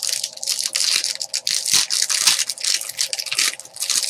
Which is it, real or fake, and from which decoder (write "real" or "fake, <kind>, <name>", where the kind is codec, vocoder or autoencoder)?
real